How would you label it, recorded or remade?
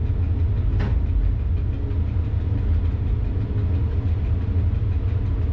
recorded